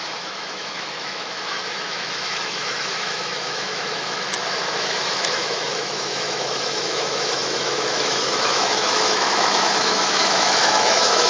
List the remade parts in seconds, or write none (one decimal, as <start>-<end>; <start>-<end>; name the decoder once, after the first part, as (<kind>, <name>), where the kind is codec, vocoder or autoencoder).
0.0-11.3 (autoencoder, DAC-VAE)